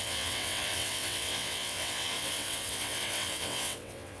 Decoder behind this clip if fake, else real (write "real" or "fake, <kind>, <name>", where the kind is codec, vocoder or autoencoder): fake, vocoder, WaveNeXt